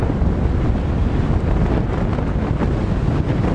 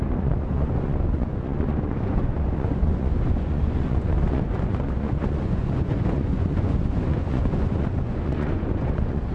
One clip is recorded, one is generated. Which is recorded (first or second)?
first